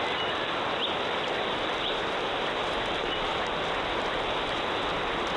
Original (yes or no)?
yes